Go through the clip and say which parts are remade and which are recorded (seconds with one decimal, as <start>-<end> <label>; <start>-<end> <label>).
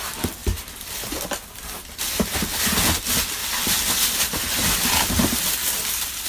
0.0-6.3 recorded